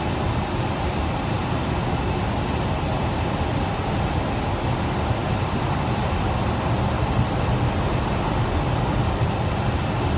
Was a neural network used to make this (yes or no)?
no